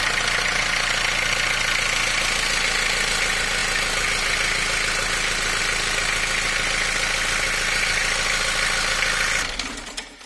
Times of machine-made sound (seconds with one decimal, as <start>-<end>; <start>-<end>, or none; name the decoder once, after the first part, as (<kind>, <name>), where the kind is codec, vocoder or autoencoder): none